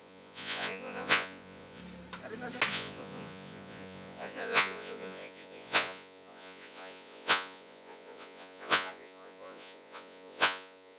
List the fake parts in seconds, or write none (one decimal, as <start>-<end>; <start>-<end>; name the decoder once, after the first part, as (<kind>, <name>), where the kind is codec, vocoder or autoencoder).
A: 0.0-1.8 (vocoder, Vocos); 2.7-11.0